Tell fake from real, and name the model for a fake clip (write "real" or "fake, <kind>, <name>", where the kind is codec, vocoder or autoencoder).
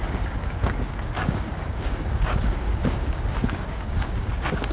fake, codec, DAC